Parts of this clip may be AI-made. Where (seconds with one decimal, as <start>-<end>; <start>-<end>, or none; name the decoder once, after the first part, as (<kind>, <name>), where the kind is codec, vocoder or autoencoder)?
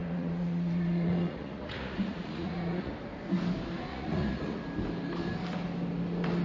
0.0-2.9 (vocoder, Vocos); 3.9-4.6